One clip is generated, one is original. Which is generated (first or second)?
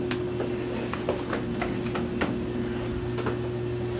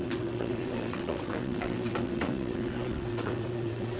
second